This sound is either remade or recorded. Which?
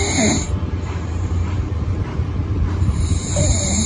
remade